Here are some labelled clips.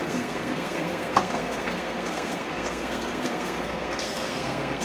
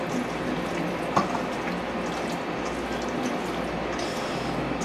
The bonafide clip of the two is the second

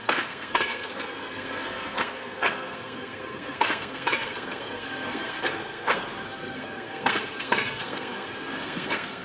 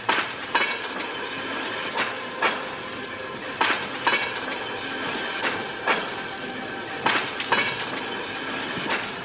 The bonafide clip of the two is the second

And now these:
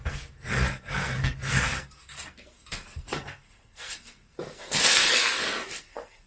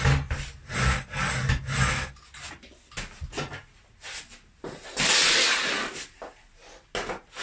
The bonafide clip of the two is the second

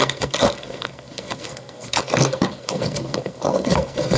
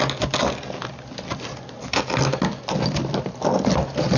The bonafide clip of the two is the second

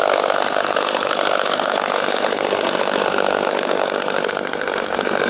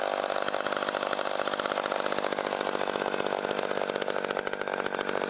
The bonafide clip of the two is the second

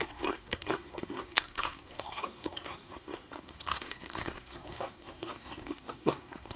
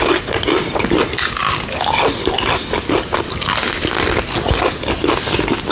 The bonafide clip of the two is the second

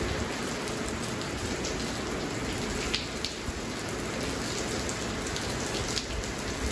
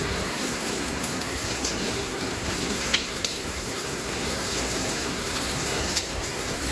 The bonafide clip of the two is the first